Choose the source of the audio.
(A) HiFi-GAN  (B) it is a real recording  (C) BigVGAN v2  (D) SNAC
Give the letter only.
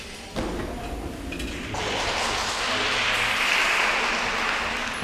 B